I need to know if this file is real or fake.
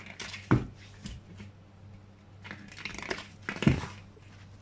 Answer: real